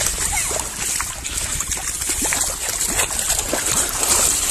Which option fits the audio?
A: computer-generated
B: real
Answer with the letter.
B